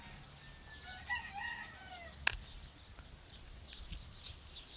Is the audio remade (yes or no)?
no